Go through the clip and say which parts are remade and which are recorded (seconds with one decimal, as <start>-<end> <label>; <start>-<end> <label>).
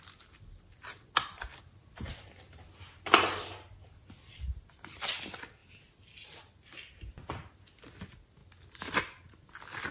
0.0-9.9 recorded